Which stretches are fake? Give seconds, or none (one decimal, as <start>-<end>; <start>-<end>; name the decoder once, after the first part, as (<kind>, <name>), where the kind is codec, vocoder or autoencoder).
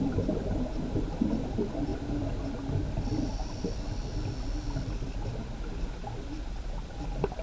none